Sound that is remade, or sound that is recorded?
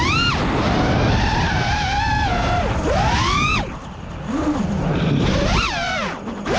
recorded